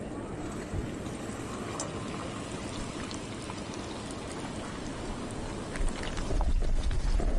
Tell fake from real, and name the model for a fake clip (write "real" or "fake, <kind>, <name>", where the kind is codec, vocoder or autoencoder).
real